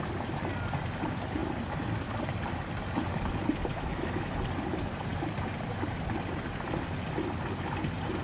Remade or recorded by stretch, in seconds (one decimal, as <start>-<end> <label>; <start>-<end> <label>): 0.0-3.7 recorded; 3.7-4.4 remade; 4.4-8.2 recorded